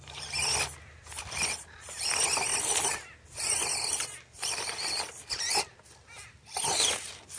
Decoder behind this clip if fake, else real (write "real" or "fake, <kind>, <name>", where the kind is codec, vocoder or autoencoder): real